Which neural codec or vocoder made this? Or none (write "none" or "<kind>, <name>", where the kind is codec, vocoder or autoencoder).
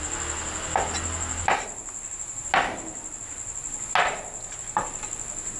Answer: none